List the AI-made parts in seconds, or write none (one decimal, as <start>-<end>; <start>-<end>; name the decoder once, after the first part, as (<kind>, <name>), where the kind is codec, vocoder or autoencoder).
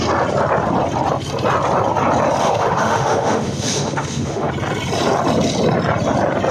2.4-4.5 (autoencoder, DAC-VAE)